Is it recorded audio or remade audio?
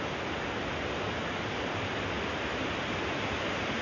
recorded